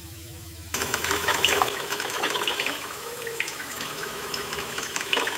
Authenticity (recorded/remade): remade